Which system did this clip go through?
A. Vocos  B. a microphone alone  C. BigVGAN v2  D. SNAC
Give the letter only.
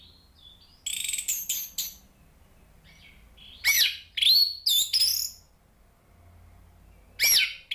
B